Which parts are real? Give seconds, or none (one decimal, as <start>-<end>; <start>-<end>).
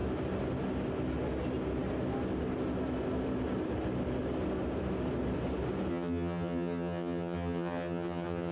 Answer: 0.0-5.9